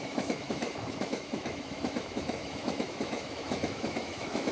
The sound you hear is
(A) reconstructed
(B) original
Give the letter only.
A